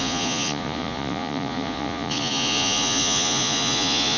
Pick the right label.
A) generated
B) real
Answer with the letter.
A